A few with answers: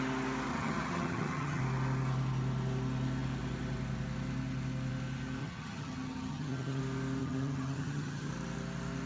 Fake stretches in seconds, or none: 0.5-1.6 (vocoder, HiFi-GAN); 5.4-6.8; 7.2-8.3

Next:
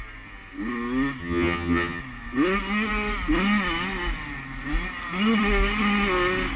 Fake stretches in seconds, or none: 1.2-2.0 (vocoder, HiFi-GAN)

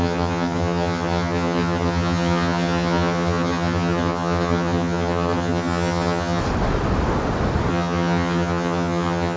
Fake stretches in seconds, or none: 0.0-6.4 (vocoder, HiFi-GAN); 7.7-9.4

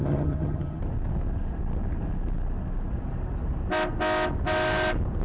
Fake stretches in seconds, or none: 0.0-0.8 (vocoder, HiFi-GAN)

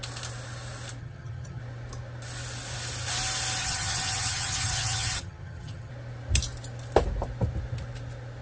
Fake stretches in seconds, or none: 1.0-1.6 (vocoder, HiFi-GAN); 3.6-5.9

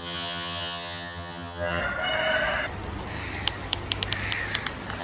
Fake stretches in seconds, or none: 0.0-1.8 (vocoder, HiFi-GAN)

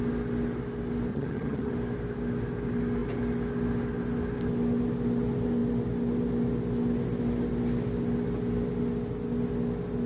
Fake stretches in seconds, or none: 1.1-1.7 (vocoder, HiFi-GAN)